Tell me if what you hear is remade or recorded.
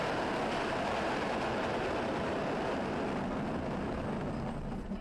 recorded